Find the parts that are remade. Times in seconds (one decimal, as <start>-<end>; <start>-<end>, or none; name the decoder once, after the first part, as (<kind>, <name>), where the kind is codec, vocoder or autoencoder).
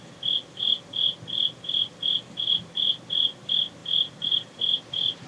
none